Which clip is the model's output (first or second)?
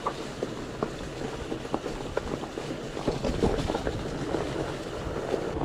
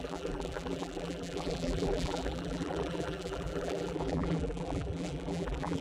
second